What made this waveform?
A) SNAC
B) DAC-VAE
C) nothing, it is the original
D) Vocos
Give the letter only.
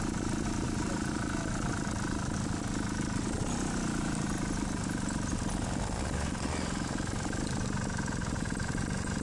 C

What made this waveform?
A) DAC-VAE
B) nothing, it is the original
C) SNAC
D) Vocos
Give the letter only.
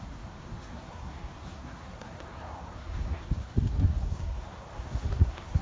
C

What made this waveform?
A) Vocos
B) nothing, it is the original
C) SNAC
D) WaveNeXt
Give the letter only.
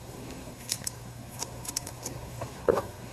C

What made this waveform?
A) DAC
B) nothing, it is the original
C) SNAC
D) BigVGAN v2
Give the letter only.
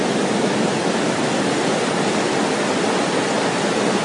B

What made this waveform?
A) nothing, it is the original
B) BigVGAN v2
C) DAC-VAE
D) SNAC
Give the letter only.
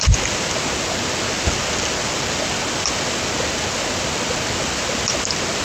A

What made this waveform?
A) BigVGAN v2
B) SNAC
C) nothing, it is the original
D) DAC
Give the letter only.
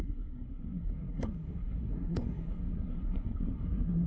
B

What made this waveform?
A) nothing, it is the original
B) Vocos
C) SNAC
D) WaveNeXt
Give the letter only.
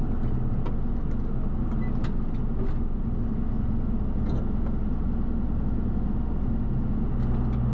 A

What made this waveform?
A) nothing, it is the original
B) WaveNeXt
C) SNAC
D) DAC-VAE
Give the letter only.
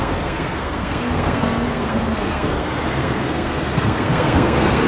C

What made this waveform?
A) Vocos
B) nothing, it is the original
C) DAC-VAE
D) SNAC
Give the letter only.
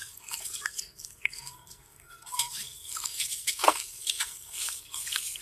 D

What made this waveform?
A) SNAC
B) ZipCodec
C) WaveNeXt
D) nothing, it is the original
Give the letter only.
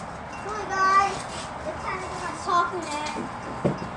D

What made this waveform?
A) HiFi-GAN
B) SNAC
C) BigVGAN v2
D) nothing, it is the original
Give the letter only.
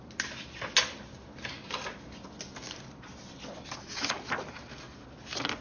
D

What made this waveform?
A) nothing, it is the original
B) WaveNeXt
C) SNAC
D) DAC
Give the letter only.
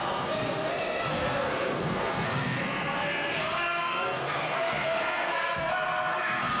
C